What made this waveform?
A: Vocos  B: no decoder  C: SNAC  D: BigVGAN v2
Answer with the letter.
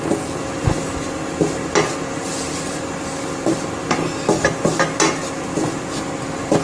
B